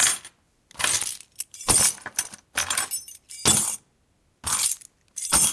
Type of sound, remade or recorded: recorded